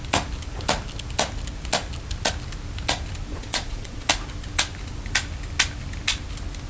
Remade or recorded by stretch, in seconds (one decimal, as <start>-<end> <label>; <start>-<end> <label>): 0.0-3.3 recorded; 3.3-4.1 remade; 4.1-6.7 recorded